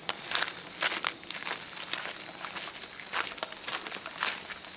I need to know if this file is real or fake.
real